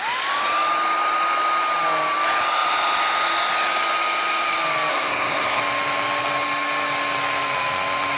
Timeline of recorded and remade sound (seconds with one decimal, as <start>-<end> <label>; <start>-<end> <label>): 0.0-4.9 recorded; 4.9-5.6 remade; 5.6-8.2 recorded